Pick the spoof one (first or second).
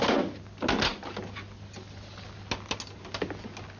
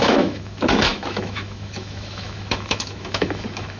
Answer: second